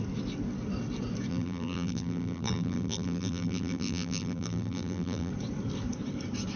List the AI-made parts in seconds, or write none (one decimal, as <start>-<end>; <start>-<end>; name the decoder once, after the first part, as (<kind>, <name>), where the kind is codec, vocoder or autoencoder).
1.3-5.3 (vocoder, BigVGAN v2)